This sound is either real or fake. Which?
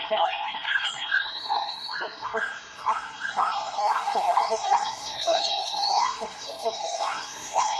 fake